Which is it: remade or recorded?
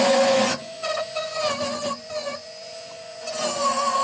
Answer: remade